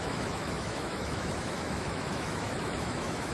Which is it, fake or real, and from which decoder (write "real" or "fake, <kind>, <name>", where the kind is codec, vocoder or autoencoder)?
fake, autoencoder, DAC-VAE